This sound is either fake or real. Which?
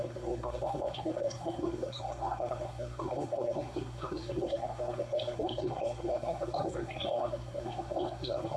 fake